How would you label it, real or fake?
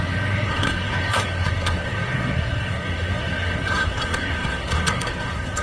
fake